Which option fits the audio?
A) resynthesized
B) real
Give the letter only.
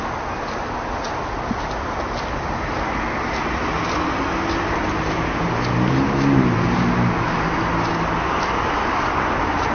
B